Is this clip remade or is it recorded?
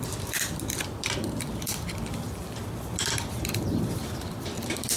remade